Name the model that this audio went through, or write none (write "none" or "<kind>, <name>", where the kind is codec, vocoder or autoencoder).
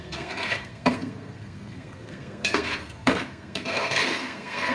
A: codec, SNAC